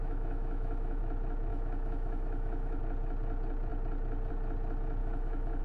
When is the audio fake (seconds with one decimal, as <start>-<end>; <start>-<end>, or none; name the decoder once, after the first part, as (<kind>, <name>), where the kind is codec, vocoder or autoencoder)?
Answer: 0.0-1.0 (autoencoder, DAC-VAE); 1.5-2.8; 5.0-5.6